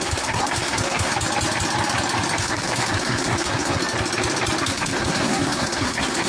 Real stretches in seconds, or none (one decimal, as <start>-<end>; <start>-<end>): 1.1-2.4; 3.8-4.6